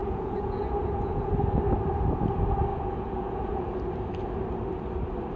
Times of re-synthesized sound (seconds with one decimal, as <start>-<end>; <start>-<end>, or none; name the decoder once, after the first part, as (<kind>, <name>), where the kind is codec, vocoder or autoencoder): 0.0-1.3 (vocoder, Vocos); 2.7-3.7